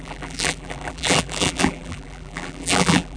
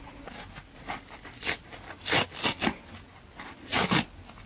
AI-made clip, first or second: first